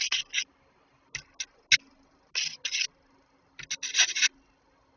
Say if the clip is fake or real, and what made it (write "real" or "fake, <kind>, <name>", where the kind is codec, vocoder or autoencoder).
real